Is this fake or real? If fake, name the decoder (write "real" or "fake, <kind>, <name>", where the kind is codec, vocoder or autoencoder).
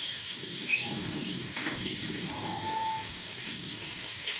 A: fake, codec, DAC